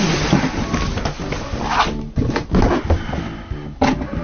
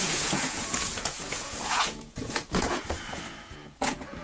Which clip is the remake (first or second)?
second